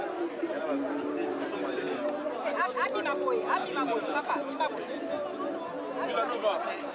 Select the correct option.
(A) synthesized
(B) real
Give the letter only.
B